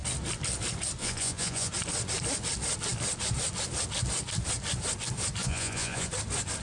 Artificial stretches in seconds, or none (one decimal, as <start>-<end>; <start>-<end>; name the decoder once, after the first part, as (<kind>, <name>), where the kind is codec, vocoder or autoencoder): 1.0-1.7 (vocoder, Vocos); 5.4-6.1